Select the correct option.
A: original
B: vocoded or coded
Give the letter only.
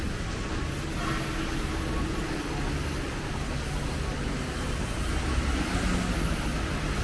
A